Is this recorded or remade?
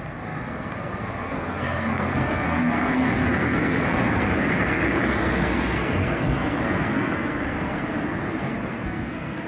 remade